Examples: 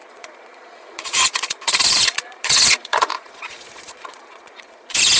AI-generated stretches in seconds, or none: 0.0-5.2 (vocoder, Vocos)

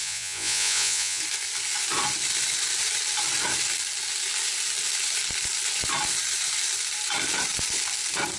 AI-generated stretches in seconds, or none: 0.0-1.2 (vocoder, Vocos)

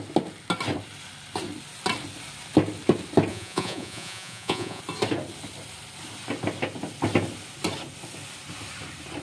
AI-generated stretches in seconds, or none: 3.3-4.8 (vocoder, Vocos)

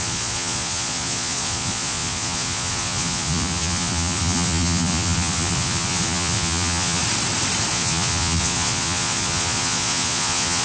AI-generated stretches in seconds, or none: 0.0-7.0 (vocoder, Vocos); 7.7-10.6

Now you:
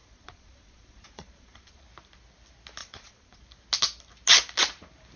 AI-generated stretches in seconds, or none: 0.0-1.8 (vocoder, Vocos); 2.8-3.4

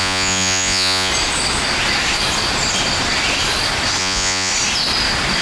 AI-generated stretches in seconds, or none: 0.0-1.1 (vocoder, Vocos); 4.0-4.5